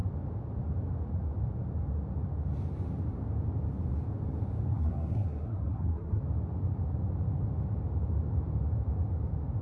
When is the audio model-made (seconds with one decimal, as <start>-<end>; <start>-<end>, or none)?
4.7-6.2